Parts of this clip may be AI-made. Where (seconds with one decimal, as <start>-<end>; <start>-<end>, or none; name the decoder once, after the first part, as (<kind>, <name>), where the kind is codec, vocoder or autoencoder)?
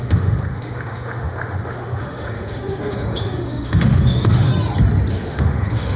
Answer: 0.0-4.5 (autoencoder, DAC-VAE); 5.1-6.0